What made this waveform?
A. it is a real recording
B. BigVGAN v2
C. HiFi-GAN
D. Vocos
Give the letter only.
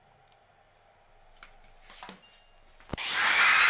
A